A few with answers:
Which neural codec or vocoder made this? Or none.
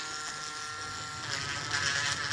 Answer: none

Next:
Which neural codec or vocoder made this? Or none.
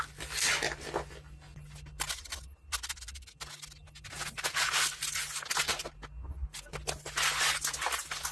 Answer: none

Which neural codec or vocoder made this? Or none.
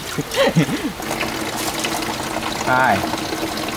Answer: none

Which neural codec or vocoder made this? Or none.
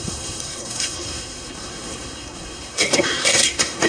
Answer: codec, SNAC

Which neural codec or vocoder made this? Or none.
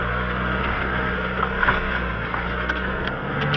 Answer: codec, SNAC